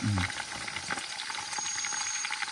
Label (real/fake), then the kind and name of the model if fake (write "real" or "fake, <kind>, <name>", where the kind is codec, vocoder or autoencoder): real